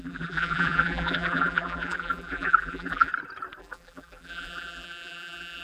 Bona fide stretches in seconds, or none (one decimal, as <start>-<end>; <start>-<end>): 3.1-3.6